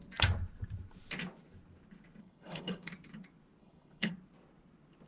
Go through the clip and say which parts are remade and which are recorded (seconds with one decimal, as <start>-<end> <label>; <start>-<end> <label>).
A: 0.0-2.2 recorded; 2.2-2.9 remade; 2.9-3.6 recorded; 3.6-4.1 remade; 4.1-5.1 recorded